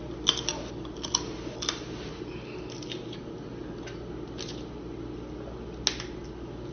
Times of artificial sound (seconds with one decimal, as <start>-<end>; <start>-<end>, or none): none